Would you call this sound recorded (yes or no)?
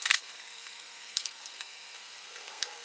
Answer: no